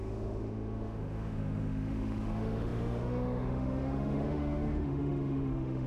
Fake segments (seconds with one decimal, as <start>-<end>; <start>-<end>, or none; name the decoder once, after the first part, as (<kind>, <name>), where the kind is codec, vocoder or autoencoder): 0.0-5.9 (autoencoder, DAC-VAE)